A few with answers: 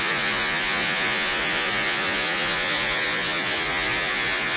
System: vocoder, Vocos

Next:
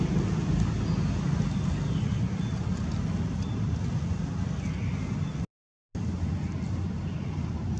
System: none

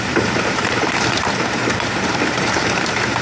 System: vocoder, BigVGAN v2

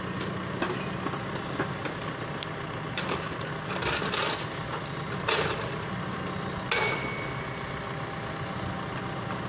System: none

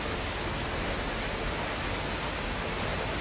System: none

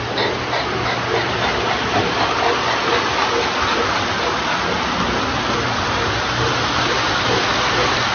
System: none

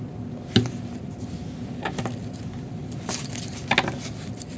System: none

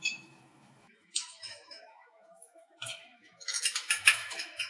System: autoencoder, DAC-VAE